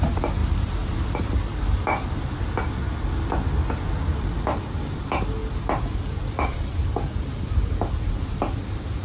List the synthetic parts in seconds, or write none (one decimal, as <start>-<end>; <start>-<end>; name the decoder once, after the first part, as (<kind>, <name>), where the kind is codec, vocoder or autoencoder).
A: 0.4-1.2 (vocoder, BigVGAN v2); 3.6-5.0; 5.4-8.1